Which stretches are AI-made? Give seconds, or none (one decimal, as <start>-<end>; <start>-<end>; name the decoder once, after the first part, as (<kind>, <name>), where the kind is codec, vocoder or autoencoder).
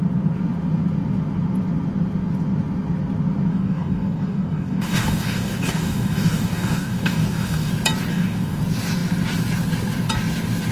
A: 3.5-7.7 (codec, DAC); 8.1-8.6